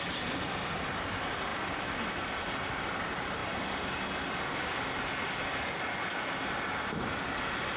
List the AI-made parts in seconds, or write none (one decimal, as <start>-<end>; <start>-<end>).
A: none